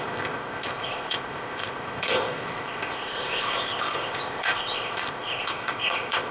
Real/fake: fake